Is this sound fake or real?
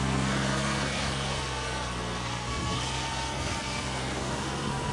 fake